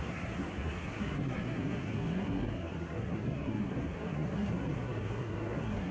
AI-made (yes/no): yes